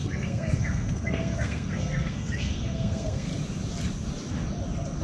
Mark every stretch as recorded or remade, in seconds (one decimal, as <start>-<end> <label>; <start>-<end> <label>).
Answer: 0.0-3.3 remade; 3.3-5.0 recorded

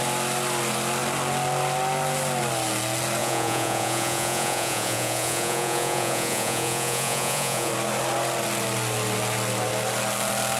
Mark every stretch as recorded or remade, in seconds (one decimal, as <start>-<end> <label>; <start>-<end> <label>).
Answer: 0.0-3.2 recorded; 3.2-7.7 remade; 7.7-10.6 recorded

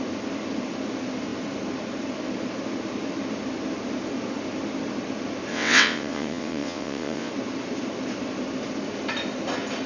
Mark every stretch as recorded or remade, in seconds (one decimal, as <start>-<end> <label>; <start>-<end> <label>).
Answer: 0.0-5.5 recorded; 5.5-7.3 remade; 7.3-9.9 recorded

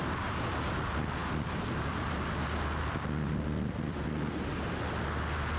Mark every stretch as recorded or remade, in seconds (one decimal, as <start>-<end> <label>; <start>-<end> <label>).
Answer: 0.0-5.6 recorded